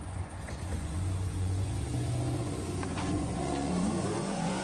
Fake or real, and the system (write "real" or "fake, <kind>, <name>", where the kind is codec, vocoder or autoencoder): fake, vocoder, Vocos